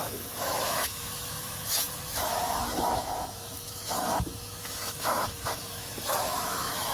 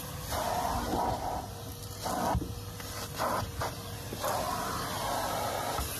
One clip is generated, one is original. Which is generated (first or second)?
first